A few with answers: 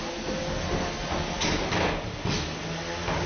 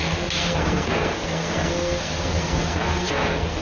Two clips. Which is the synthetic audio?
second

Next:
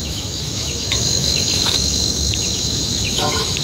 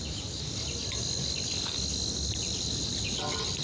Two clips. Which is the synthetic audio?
first